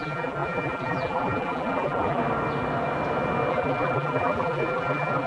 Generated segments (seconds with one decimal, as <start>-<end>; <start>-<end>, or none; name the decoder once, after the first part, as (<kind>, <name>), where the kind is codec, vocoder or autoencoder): 0.0-2.2 (vocoder, BigVGAN v2); 3.5-5.3